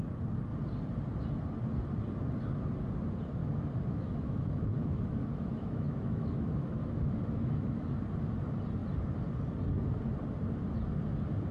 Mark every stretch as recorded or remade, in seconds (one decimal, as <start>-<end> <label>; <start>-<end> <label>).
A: 0.0-3.4 recorded; 3.4-8.0 remade; 8.0-11.5 recorded